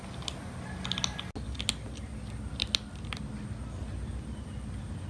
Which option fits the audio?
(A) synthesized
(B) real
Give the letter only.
B